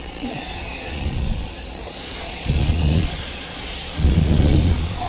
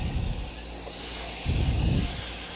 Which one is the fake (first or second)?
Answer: first